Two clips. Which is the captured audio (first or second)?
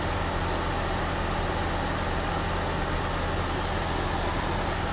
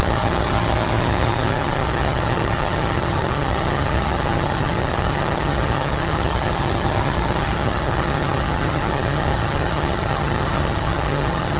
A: first